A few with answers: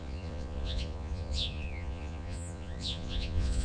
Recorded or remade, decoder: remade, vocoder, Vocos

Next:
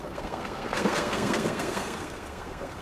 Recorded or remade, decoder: remade, codec, SNAC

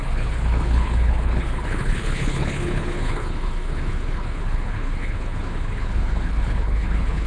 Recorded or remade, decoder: remade, codec, HILCodec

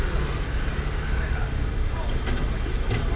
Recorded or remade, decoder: recorded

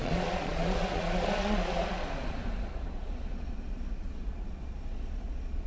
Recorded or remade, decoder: remade, vocoder, Vocos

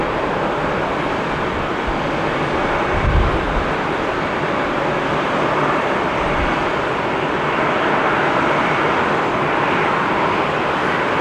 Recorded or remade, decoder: recorded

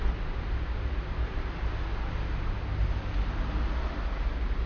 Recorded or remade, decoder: recorded